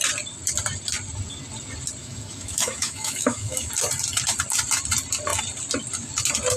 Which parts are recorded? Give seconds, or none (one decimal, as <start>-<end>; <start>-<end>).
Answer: 0.0-2.0; 3.7-6.6